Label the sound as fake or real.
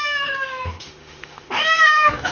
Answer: fake